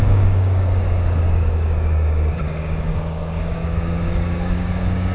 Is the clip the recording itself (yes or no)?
no